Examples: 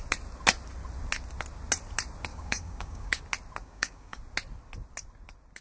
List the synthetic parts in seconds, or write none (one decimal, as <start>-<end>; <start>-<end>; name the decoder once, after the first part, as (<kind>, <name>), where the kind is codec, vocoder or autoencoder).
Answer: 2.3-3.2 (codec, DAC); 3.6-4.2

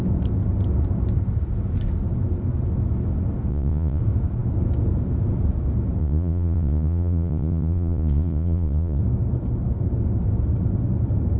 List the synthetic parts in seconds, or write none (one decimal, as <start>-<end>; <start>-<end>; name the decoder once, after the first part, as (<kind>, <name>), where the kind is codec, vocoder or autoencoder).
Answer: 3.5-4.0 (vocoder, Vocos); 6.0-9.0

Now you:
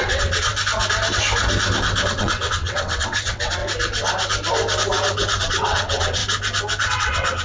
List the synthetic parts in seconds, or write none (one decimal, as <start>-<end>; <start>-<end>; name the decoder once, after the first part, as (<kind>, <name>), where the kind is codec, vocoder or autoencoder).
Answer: 0.0-0.5 (vocoder, WaveNeXt); 2.1-3.6; 5.4-6.2; 6.9-7.4